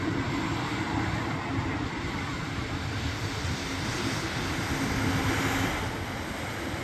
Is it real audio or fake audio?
real